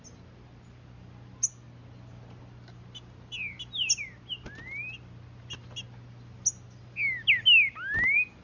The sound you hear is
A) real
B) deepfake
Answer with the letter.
A